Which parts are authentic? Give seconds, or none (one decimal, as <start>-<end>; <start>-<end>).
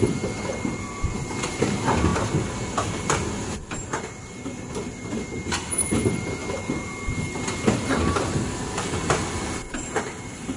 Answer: 6.4-7.7